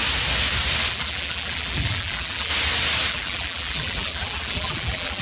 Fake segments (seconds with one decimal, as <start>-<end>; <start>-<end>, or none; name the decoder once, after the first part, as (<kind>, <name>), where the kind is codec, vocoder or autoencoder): 0.9-2.5 (vocoder, BigVGAN v2); 3.1-5.2